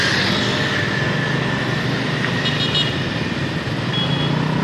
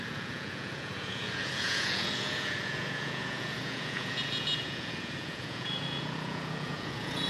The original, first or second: first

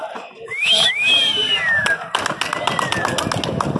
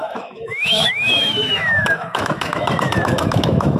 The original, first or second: first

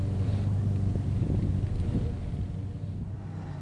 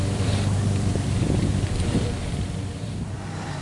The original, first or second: first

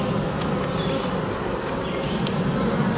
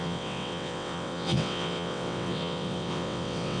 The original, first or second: first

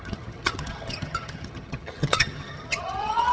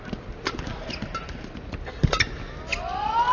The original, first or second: second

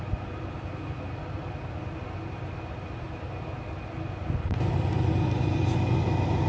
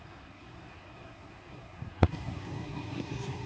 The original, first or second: first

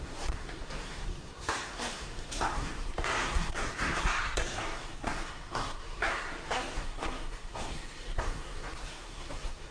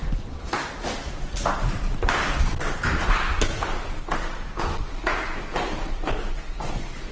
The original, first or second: second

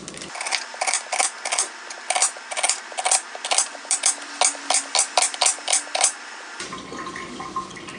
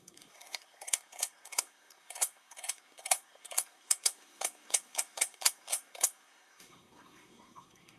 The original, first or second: first